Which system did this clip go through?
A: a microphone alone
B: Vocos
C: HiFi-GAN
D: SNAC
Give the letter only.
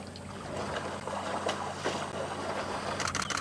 A